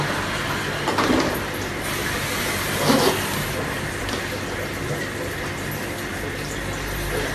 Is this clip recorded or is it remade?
recorded